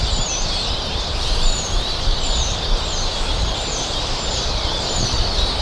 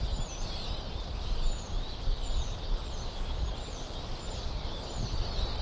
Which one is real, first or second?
second